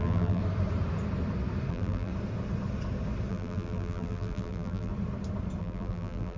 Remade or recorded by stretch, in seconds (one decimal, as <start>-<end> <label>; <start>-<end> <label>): 0.0-0.4 remade; 0.4-1.7 recorded; 1.7-2.1 remade; 2.1-3.3 recorded; 3.3-4.9 remade; 4.9-5.6 recorded; 5.6-6.4 remade